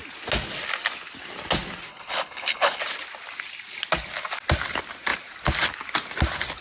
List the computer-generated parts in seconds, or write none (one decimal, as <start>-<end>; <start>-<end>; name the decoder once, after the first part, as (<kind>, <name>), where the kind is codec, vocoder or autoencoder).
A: 1.9-2.8 (codec, HILCodec)